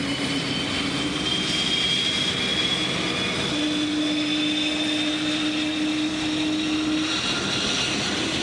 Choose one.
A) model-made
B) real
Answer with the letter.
B